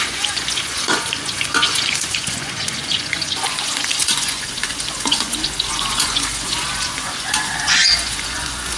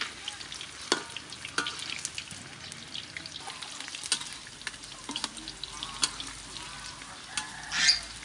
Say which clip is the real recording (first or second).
second